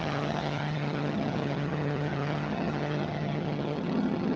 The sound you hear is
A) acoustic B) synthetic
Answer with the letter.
B